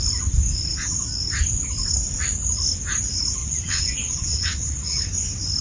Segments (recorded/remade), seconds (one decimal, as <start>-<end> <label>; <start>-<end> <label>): 0.0-3.4 recorded; 3.4-5.0 remade; 5.0-5.6 recorded